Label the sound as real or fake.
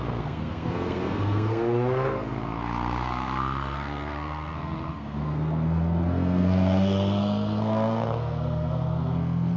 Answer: fake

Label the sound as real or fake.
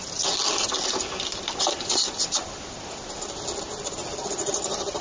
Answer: real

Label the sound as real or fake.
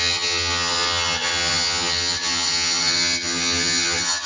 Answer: fake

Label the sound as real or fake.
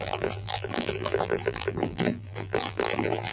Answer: fake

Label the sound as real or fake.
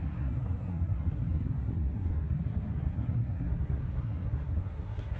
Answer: fake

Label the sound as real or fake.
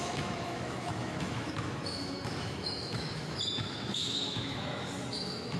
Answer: fake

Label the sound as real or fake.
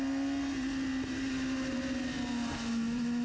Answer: real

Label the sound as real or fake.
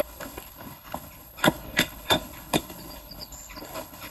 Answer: fake